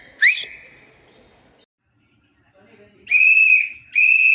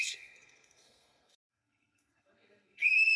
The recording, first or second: first